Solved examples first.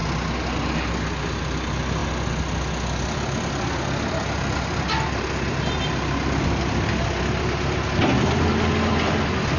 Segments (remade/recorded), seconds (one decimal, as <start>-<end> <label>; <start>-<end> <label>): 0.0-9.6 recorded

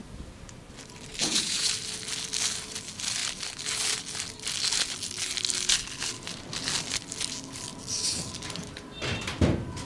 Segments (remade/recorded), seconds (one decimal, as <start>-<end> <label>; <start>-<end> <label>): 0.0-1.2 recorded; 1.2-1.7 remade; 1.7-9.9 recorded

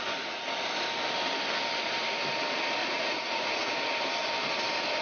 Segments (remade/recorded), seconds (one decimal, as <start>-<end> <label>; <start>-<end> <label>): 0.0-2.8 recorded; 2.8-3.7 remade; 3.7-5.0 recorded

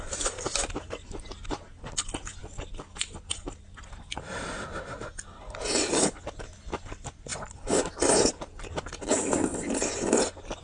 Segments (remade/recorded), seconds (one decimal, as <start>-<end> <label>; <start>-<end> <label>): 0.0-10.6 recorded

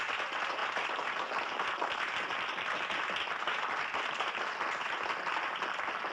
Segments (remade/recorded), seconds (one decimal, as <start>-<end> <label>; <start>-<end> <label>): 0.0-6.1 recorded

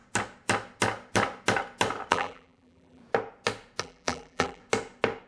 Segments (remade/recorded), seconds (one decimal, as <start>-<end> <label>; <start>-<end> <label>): 0.0-2.1 recorded; 2.1-3.0 remade; 3.0-3.8 recorded; 3.8-4.6 remade; 4.6-5.3 recorded

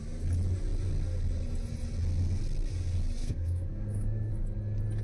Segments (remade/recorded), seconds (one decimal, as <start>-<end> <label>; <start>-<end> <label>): 0.0-3.2 recorded; 3.2-4.3 remade; 4.3-5.0 recorded

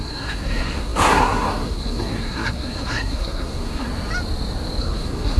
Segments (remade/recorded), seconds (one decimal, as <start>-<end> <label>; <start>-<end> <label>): 0.0-3.9 remade; 3.9-4.8 recorded; 4.8-5.4 remade